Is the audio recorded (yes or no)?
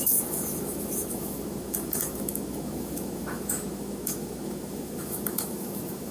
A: no